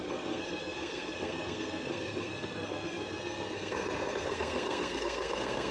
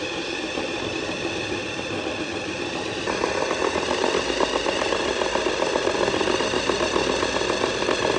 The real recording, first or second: second